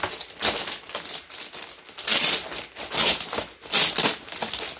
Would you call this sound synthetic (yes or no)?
no